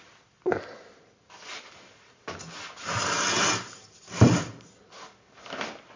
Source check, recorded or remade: recorded